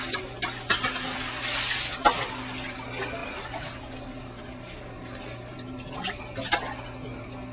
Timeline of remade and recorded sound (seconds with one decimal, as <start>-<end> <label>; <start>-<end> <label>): 0.0-3.2 recorded; 3.2-6.2 remade; 6.2-7.5 recorded